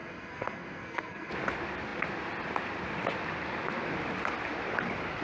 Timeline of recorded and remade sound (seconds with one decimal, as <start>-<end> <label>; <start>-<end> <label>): 0.0-1.3 remade; 1.3-5.2 recorded